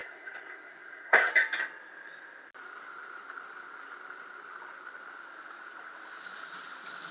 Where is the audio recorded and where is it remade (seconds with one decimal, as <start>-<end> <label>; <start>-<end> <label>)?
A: 0.0-1.3 remade; 1.3-7.1 recorded